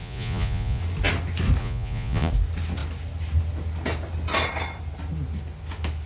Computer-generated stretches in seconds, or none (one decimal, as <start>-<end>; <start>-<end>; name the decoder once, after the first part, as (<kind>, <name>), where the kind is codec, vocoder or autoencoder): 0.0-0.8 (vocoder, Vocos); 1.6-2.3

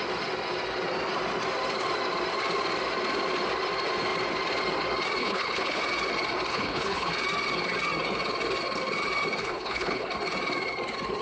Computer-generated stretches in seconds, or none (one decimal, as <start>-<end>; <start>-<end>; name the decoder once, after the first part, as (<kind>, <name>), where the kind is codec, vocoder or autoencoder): 5.2-5.8 (codec, HILCodec); 6.5-7.1; 9.4-10.1

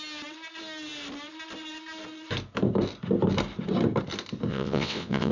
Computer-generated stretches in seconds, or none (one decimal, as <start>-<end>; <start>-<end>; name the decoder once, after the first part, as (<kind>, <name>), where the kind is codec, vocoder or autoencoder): 4.5-5.3 (vocoder, WaveNeXt)

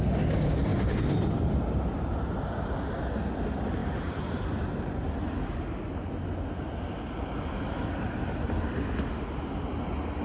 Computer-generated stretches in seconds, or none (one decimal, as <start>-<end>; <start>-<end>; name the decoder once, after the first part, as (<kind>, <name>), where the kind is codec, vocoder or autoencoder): 0.7-2.8 (vocoder, BigVGAN v2); 3.8-5.3